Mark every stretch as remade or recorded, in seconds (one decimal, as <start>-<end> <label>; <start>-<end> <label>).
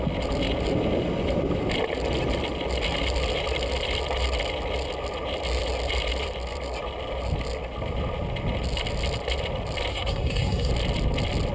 0.0-9.9 recorded; 9.9-10.7 remade; 10.7-11.5 recorded